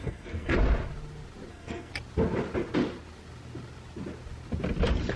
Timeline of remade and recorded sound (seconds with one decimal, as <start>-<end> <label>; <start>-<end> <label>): 0.0-0.5 remade; 0.5-1.5 recorded; 1.5-1.9 remade; 1.9-5.2 recorded